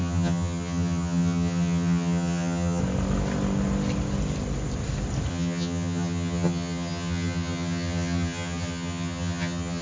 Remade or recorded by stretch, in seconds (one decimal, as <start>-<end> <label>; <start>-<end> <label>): 0.0-2.8 remade; 2.8-5.3 recorded; 5.3-9.8 remade